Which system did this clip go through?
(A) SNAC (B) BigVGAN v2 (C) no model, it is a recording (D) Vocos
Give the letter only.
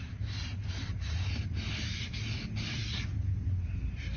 C